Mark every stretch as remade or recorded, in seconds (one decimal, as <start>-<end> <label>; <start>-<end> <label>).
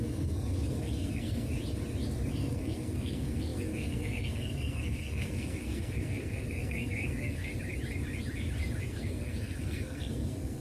0.0-1.5 remade; 1.5-2.3 recorded; 2.3-7.5 remade; 7.5-8.8 recorded; 8.8-10.6 remade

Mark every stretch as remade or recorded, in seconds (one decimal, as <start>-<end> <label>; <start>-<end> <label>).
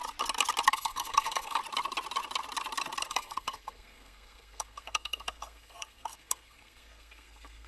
0.0-0.7 recorded; 0.7-1.6 remade; 1.6-3.1 recorded; 3.1-7.7 remade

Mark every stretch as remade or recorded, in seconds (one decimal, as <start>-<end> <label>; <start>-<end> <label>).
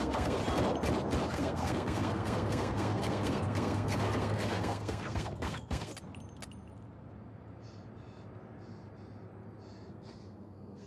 0.0-0.4 remade; 0.4-1.3 recorded; 1.3-5.9 remade; 5.9-9.9 recorded; 9.9-10.9 remade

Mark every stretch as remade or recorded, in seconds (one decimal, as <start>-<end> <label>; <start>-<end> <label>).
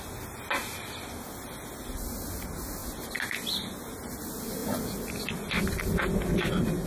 0.0-6.9 recorded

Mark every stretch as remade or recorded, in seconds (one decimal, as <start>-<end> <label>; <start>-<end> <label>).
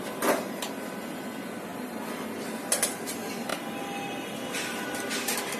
0.0-5.6 recorded